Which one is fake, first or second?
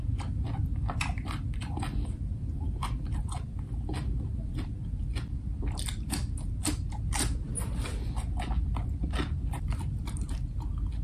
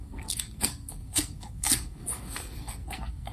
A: second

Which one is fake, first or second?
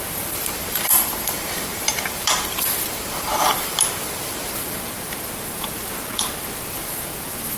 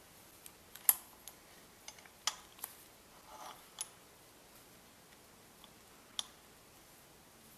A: first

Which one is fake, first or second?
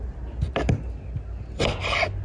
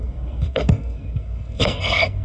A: second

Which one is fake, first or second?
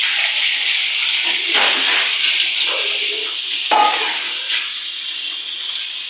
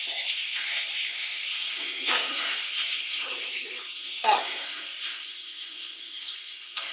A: second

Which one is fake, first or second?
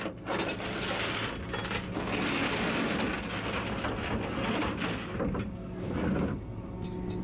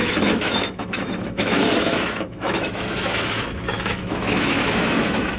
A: second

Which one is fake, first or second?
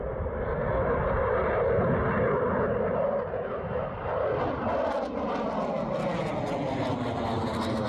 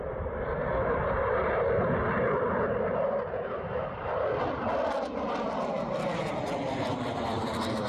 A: second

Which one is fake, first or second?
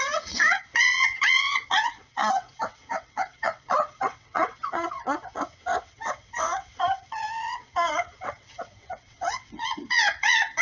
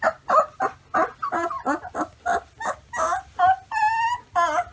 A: first